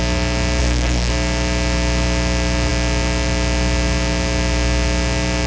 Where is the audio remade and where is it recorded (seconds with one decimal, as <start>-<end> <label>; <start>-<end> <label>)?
0.0-0.6 recorded; 0.6-1.1 remade; 1.1-5.5 recorded